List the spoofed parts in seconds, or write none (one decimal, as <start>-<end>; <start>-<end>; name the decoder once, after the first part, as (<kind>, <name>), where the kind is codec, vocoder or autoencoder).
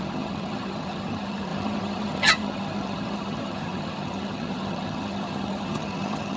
0.0-6.4 (vocoder, HiFi-GAN)